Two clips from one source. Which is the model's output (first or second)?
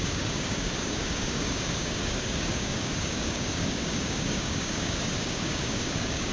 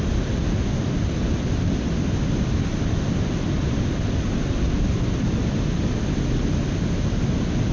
first